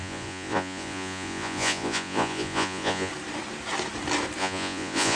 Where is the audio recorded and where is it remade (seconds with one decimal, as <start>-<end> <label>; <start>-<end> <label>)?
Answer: 0.0-3.1 remade; 3.1-4.4 recorded; 4.4-5.2 remade